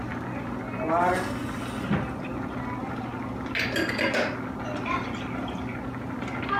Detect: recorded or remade recorded